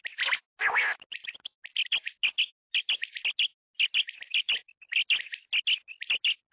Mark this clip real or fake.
real